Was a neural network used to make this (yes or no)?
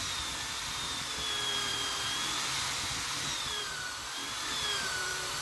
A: yes